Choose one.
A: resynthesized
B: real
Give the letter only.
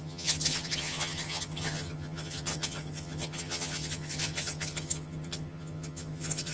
A